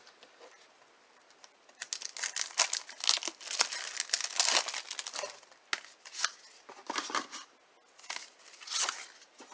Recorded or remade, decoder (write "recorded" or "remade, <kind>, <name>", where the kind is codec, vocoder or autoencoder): recorded